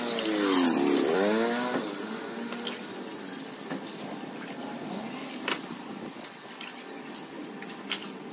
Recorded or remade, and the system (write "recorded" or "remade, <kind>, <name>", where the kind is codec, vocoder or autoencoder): recorded